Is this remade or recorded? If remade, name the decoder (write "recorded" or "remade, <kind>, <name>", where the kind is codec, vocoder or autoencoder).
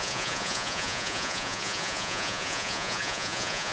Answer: remade, vocoder, Vocos